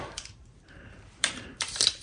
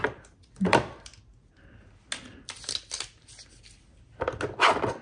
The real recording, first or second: second